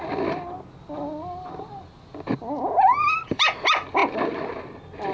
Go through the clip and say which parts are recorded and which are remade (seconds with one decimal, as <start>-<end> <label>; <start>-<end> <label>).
0.0-3.0 recorded; 3.0-3.5 remade; 3.5-5.1 recorded

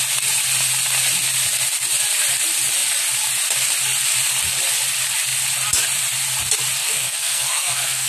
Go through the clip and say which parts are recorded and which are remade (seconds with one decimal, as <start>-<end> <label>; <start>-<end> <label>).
0.0-6.8 recorded; 6.8-8.1 remade